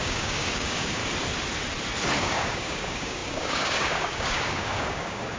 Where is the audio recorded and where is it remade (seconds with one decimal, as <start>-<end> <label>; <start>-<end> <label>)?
0.0-1.0 remade; 1.0-2.2 recorded; 2.2-5.4 remade